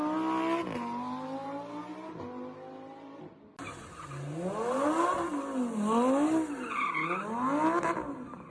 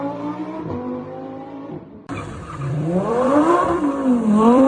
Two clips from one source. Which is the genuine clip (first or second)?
first